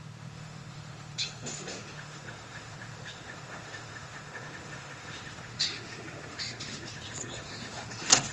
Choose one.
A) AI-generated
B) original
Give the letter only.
A